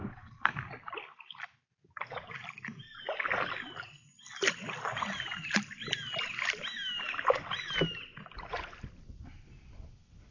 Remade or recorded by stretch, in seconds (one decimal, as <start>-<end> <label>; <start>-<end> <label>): 0.0-0.7 remade; 0.7-10.3 recorded